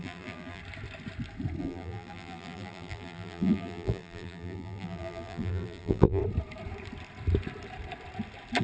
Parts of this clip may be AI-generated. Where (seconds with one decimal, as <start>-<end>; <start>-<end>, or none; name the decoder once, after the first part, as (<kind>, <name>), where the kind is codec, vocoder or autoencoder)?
0.0-0.6 (vocoder, BigVGAN v2); 1.6-6.2